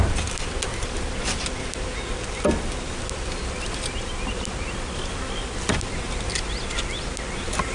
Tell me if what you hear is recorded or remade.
recorded